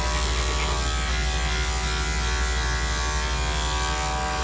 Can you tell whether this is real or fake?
real